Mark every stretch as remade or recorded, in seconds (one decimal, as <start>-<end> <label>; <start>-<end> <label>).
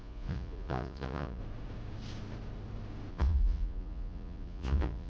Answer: 0.0-1.4 remade; 1.4-3.1 recorded; 3.1-5.1 remade